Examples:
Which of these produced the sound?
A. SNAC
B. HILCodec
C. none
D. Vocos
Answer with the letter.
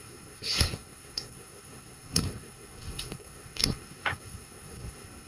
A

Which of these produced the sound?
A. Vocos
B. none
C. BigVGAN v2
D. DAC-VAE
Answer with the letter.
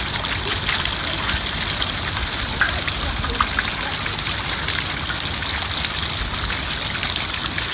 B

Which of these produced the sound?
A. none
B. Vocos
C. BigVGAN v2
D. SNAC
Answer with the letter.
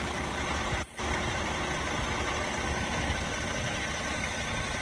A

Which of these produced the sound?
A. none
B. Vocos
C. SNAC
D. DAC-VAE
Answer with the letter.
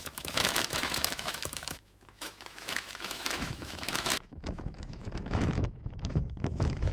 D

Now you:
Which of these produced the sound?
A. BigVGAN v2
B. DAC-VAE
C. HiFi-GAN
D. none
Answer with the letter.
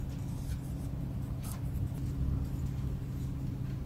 D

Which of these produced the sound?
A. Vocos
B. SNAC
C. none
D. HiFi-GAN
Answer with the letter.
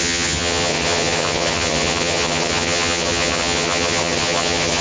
D